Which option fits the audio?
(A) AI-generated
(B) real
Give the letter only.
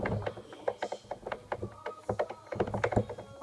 B